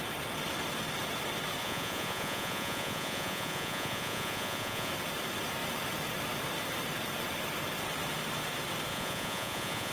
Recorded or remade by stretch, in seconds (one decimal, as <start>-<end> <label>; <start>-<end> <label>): 0.0-1.6 recorded; 1.6-4.9 remade; 4.9-8.9 recorded; 8.9-9.9 remade